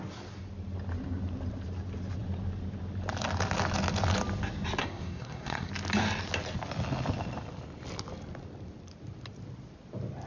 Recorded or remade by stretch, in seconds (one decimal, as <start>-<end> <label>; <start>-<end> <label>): 0.0-4.8 recorded; 4.8-5.7 remade; 5.7-10.3 recorded